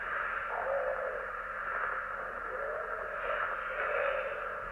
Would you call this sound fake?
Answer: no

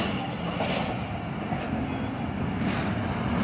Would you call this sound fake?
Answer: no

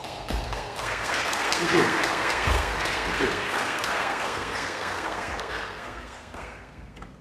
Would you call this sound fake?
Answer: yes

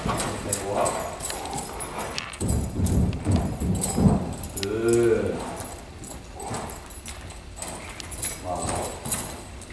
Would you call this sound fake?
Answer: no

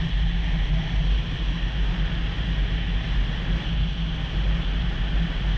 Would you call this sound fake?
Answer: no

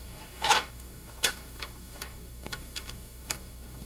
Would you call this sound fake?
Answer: yes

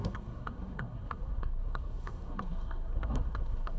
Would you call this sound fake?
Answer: yes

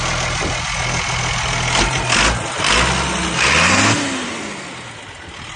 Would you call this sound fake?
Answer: no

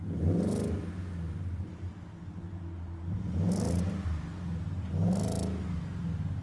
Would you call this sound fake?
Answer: no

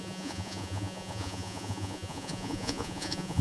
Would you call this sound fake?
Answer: yes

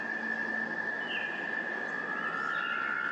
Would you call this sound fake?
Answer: no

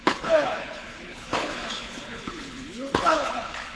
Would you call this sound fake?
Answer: yes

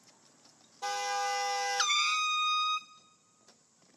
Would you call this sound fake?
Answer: no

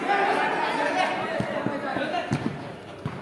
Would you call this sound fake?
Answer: no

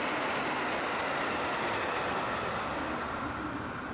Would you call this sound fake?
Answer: no